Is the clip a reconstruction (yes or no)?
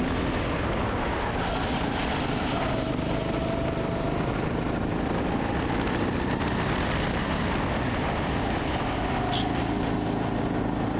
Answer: no